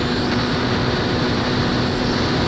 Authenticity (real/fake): real